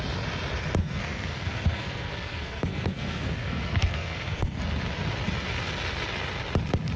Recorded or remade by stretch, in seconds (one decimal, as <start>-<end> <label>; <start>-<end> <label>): 0.0-0.8 recorded; 0.8-4.6 remade; 4.6-7.0 recorded